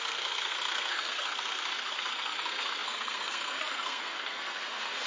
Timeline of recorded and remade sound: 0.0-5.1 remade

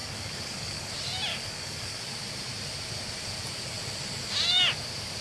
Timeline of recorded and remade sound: 0.0-0.9 remade; 0.9-1.3 recorded; 1.3-2.0 remade; 2.0-5.2 recorded

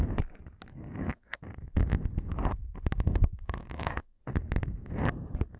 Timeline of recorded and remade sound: 0.0-0.7 recorded; 0.7-1.4 remade; 1.4-3.6 recorded; 3.6-4.2 remade; 4.2-5.6 recorded

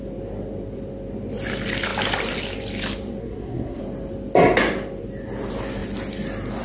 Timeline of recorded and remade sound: 0.0-3.2 recorded; 3.2-3.8 remade; 3.8-6.6 recorded

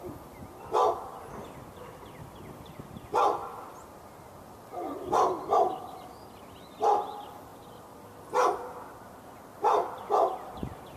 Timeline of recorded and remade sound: 0.0-3.4 recorded; 3.4-5.1 remade; 5.1-11.0 recorded

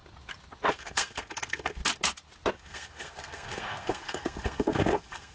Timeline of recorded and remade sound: 0.0-0.7 recorded; 0.7-1.8 remade; 1.8-2.5 recorded; 2.5-5.3 remade

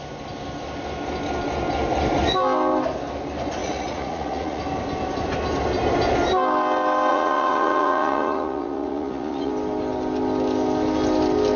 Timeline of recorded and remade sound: 0.0-3.6 recorded; 3.6-4.6 remade; 4.6-7.1 recorded; 7.1-9.5 remade; 9.5-11.6 recorded